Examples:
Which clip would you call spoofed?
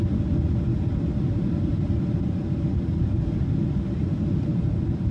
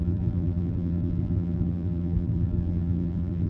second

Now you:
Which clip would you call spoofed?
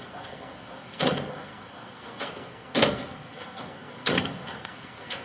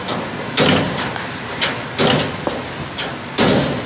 first